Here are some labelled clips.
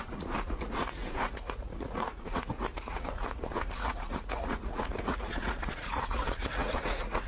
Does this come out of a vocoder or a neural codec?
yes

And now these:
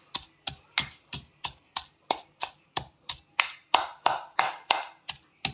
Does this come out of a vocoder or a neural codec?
no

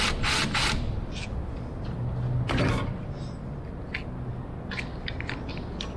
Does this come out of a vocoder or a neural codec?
no